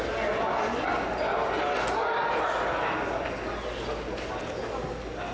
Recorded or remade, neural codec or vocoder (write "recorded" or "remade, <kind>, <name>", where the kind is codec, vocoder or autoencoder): recorded